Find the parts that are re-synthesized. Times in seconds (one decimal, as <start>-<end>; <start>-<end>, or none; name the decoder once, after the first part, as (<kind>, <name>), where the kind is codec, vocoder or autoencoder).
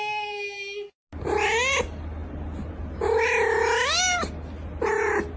none